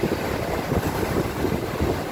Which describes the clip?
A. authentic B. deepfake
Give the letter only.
A